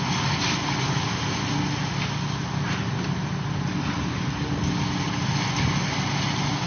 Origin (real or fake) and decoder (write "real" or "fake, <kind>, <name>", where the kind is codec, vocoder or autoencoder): real